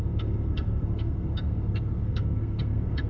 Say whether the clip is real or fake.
fake